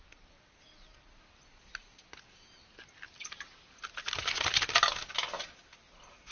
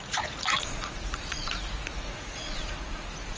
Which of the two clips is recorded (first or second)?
first